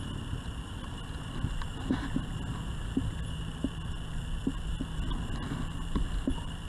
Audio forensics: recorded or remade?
recorded